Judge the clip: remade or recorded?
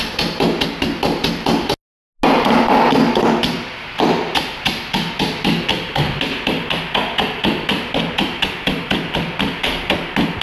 recorded